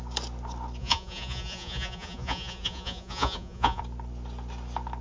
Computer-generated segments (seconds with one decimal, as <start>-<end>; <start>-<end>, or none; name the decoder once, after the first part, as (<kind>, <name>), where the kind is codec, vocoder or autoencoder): 0.8-3.8 (vocoder, Vocos)